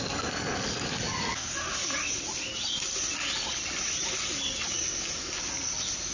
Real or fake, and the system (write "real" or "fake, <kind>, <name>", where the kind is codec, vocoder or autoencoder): real